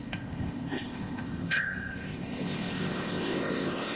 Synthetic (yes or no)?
yes